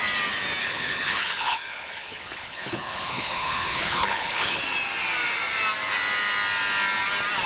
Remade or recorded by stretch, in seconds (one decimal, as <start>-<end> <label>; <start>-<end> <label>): 0.0-0.6 recorded; 0.6-4.6 remade; 4.6-7.5 recorded